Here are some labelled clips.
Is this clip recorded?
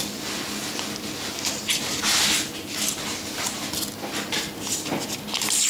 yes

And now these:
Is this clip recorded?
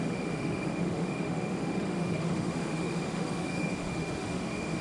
no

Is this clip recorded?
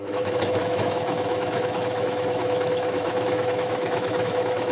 no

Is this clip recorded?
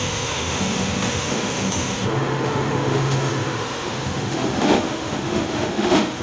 no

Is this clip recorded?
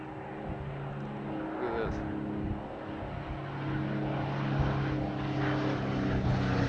yes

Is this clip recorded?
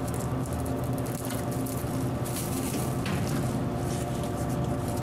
yes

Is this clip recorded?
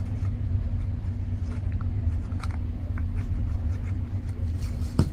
yes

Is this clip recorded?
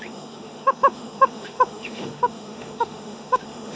no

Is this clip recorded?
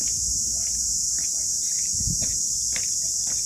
yes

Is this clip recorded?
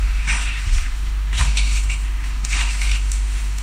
no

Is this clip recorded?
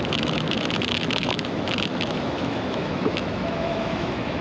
no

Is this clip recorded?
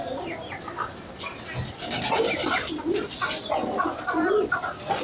yes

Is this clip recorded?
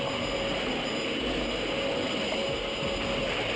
yes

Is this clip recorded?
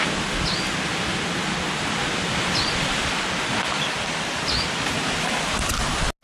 yes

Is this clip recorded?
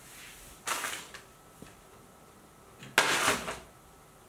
yes